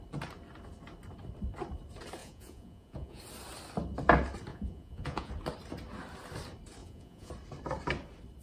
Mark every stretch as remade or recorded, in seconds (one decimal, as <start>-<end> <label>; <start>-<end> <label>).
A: 0.0-2.2 recorded; 2.2-3.2 remade; 3.2-4.5 recorded; 4.5-5.3 remade; 5.3-6.8 recorded; 6.8-7.3 remade; 7.3-8.4 recorded